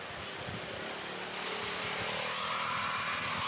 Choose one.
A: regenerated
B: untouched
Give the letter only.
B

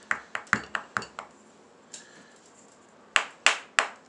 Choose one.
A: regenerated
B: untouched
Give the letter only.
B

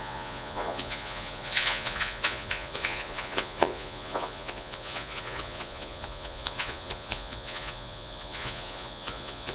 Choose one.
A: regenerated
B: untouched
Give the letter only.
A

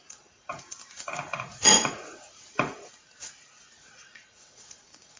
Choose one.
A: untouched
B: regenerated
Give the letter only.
B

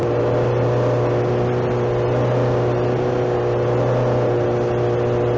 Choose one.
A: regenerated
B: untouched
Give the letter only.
B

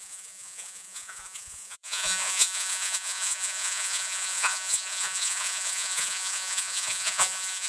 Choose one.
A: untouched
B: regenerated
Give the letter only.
B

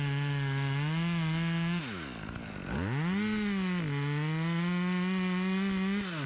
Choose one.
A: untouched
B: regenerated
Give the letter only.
A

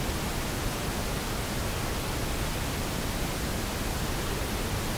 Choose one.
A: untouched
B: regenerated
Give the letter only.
A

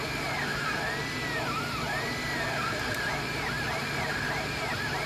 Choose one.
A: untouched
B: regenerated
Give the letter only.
A